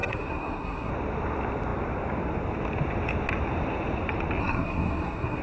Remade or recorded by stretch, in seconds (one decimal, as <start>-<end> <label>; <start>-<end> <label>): 0.0-0.9 remade; 0.9-4.4 recorded; 4.4-5.4 remade

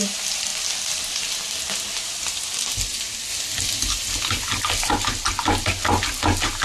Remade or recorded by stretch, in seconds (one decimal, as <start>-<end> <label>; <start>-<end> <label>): 0.0-6.6 recorded

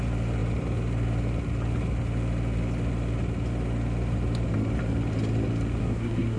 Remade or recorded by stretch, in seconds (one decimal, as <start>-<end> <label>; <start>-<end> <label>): 0.0-5.8 recorded; 5.8-6.4 remade

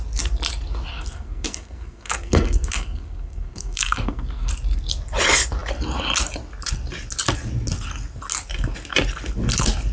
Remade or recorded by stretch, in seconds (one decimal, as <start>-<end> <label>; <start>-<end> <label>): 0.0-0.9 recorded; 0.9-4.5 remade; 4.5-9.9 recorded

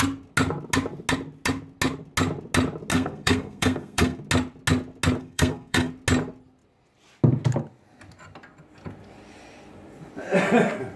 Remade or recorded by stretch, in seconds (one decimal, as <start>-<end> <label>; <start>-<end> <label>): 0.0-2.9 recorded; 2.9-4.2 remade; 4.2-5.2 recorded; 5.2-5.9 remade; 5.9-11.0 recorded

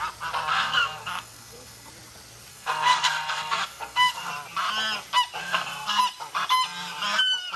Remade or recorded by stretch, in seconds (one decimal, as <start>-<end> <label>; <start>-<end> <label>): 0.0-0.5 recorded; 0.5-1.9 remade; 1.9-2.5 recorded; 2.5-4.3 remade; 4.3-5.4 recorded; 5.4-6.0 remade; 6.0-7.6 recorded

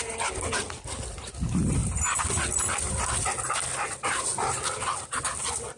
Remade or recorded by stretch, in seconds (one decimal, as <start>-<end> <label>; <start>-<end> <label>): 0.0-5.8 recorded